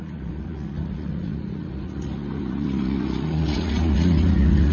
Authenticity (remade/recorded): remade